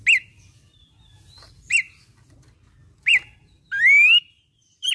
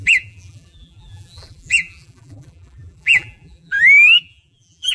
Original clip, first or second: first